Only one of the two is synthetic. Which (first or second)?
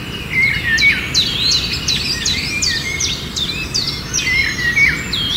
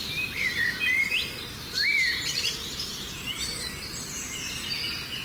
second